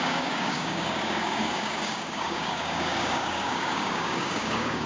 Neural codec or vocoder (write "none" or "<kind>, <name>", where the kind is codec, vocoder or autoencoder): codec, DAC